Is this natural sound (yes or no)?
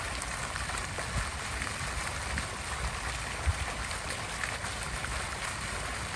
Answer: yes